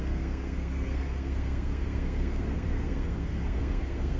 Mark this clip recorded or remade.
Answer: remade